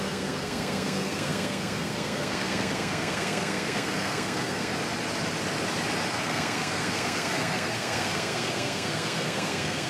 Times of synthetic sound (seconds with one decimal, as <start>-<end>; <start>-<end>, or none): 0.0-4.7; 6.1-9.9